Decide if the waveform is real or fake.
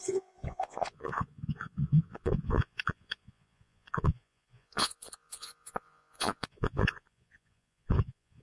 fake